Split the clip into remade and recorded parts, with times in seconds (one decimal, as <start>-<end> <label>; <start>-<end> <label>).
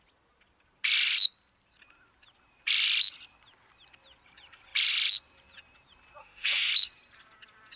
0.0-6.2 recorded; 6.2-6.7 remade; 6.7-7.8 recorded